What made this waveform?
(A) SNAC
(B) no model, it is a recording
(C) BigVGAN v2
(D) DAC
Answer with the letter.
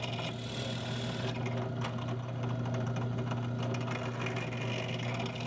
B